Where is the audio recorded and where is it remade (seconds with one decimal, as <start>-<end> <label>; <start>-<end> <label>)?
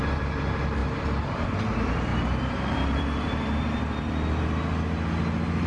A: 0.0-0.8 recorded; 0.8-1.4 remade; 1.4-2.1 recorded; 2.1-4.4 remade; 4.4-5.7 recorded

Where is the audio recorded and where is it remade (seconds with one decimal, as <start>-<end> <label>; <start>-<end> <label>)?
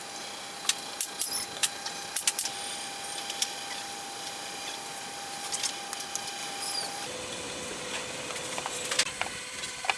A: 0.0-1.6 recorded; 1.6-5.7 remade; 5.7-6.4 recorded; 6.4-10.0 remade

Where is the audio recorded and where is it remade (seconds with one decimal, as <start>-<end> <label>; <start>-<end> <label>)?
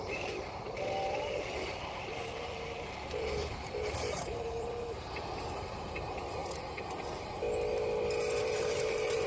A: 0.0-6.4 remade; 6.4-8.4 recorded; 8.4-9.3 remade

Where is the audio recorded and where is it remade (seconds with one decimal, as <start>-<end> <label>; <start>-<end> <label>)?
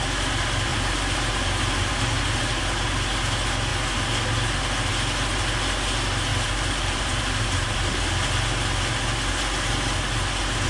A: 0.0-0.7 recorded; 0.7-2.6 remade; 2.6-6.3 recorded; 6.3-8.0 remade; 8.0-10.7 recorded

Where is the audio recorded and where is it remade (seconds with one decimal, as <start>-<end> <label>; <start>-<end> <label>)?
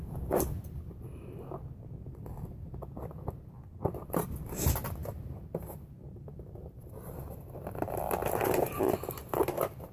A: 0.0-5.0 recorded; 5.0-5.8 remade; 5.8-9.9 recorded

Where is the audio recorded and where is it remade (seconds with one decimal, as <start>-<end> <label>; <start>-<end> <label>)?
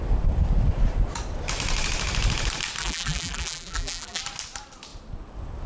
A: 0.0-2.8 recorded; 2.8-4.2 remade; 4.2-5.7 recorded